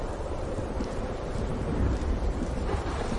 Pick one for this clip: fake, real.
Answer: fake